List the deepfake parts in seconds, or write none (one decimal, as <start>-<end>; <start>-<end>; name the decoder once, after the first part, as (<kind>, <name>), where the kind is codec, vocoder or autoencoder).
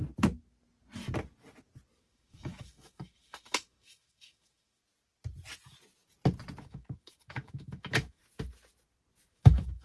2.0-4.8 (autoencoder, DAC-VAE); 6.6-8.2; 9.3-9.8